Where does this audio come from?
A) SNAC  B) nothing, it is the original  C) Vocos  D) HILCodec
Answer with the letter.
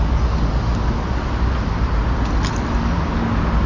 B